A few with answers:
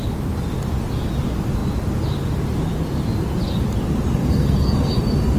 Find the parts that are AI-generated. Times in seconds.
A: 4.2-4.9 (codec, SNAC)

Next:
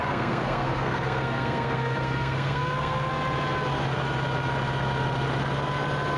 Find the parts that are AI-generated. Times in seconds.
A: 0.0-3.1 (codec, SNAC)

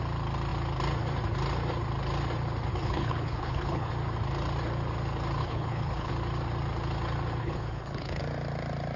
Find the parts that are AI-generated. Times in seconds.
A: 2.7-3.9 (codec, HILCodec); 5.4-6.1; 7.4-8.2

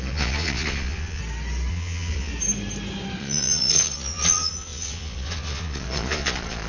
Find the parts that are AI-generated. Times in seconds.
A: 0.0-1.2 (vocoder, Vocos); 1.7-2.3; 3.2-6.7

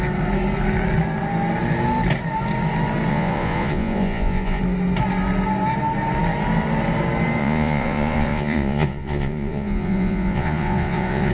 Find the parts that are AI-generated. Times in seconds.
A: 3.1-4.6 (vocoder, Vocos); 7.4-11.3